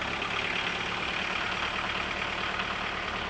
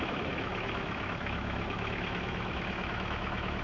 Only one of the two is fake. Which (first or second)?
second